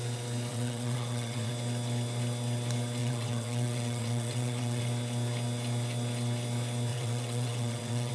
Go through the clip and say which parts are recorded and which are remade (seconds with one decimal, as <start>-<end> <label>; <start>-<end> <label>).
0.0-0.5 recorded; 0.5-1.5 remade; 1.5-3.0 recorded; 3.0-4.8 remade; 4.8-6.9 recorded; 6.9-8.1 remade